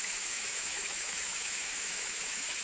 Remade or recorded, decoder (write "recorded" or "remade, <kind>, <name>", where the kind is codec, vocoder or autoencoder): remade, autoencoder, DAC-VAE